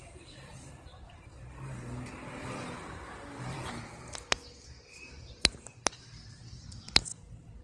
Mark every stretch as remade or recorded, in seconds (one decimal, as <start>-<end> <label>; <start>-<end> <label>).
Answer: 0.0-3.6 remade; 3.6-5.1 recorded; 5.1-7.6 remade